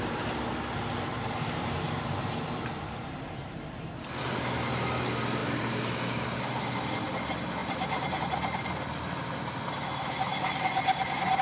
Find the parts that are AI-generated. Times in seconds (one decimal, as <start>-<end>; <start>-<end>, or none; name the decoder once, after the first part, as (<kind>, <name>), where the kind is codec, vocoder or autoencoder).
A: 1.1-4.1 (vocoder, BigVGAN v2); 5.4-6.4; 7.6-8.2